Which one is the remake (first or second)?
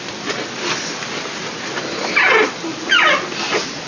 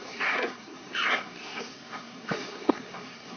second